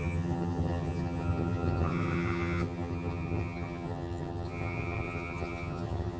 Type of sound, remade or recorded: remade